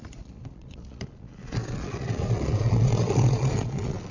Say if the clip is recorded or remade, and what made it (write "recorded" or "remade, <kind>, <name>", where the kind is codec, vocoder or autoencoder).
remade, vocoder, Vocos